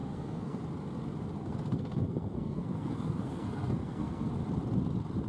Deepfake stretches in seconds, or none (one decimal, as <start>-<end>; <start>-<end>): 0.0-0.6; 1.4-4.3